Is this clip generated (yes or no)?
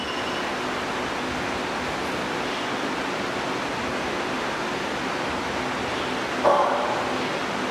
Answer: no